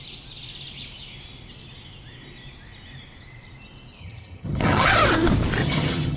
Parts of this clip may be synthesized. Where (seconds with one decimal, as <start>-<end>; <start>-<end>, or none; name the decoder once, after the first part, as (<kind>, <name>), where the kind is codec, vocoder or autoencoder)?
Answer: 4.0-4.9 (vocoder, HiFi-GAN); 5.6-6.2